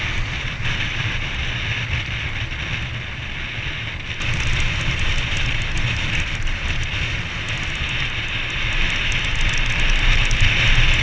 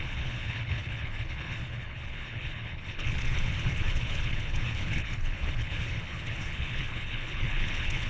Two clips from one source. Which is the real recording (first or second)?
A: first